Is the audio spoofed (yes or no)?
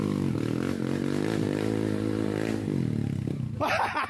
no